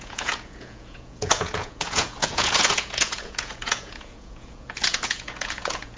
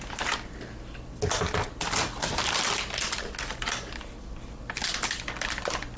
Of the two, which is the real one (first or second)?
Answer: second